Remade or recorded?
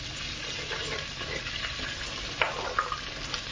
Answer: recorded